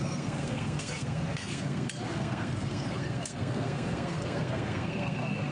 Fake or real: fake